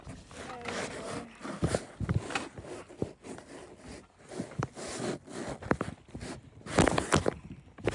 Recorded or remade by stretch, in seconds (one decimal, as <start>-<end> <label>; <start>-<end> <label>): 0.0-7.9 recorded